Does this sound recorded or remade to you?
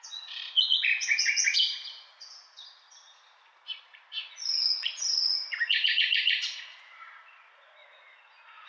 remade